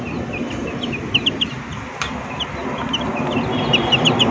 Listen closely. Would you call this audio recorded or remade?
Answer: recorded